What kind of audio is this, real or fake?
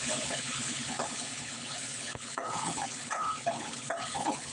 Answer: fake